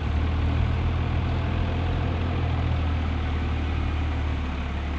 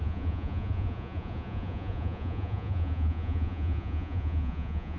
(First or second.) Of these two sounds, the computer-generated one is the second